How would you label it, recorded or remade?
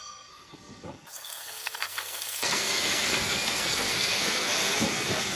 remade